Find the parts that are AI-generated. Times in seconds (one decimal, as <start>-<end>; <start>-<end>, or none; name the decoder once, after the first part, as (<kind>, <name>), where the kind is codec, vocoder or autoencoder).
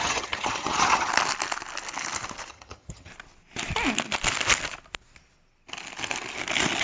0.0-1.1 (vocoder, HiFi-GAN); 2.5-3.1